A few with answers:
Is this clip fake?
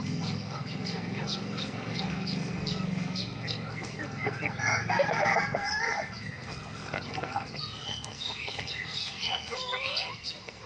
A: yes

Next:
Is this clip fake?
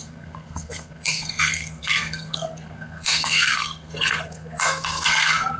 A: yes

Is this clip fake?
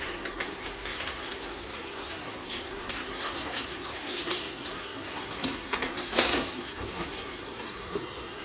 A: yes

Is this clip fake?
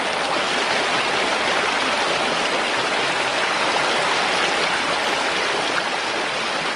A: no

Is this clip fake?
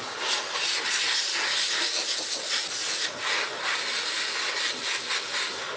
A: no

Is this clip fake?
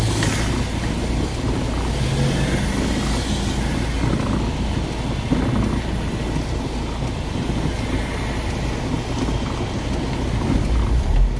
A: no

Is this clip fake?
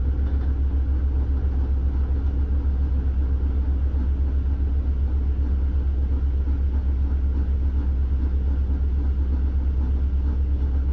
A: no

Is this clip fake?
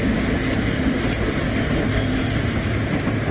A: no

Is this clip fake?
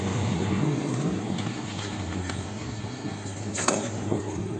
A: yes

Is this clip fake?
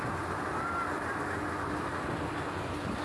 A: no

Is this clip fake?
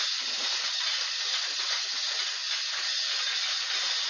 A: no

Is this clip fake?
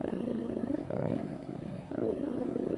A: yes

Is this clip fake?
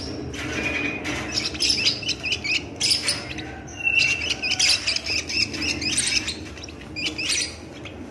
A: no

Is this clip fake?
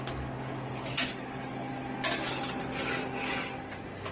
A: no